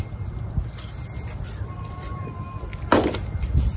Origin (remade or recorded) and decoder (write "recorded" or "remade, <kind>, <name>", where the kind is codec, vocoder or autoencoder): recorded